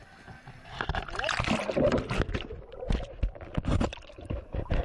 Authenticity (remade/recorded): recorded